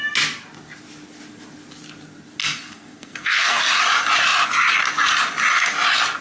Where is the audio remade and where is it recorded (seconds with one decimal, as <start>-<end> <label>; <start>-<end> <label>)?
0.0-2.4 recorded; 2.4-3.6 remade; 3.6-6.2 recorded